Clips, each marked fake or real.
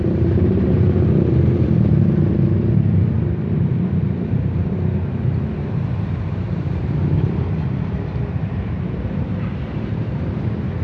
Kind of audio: fake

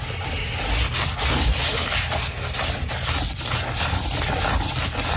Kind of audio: real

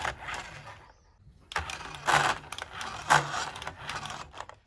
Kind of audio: real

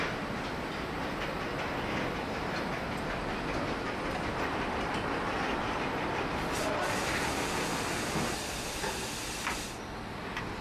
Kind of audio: fake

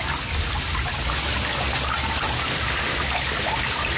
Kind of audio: real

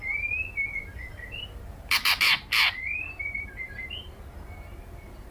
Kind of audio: fake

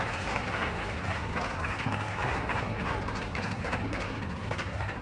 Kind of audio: fake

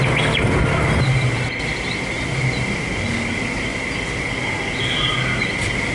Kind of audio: real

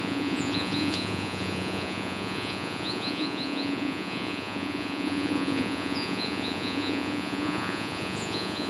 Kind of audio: fake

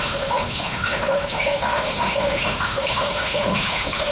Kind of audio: fake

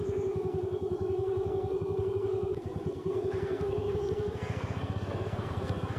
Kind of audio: fake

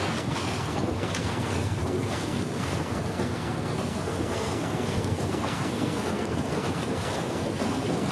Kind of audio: fake